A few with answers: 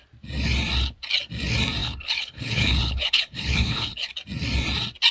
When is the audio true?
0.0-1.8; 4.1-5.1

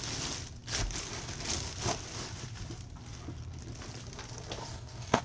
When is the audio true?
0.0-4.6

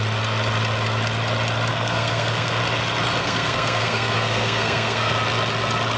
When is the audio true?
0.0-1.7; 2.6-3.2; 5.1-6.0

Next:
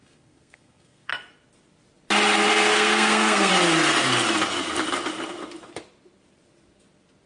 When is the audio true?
1.1-2.5; 3.5-7.3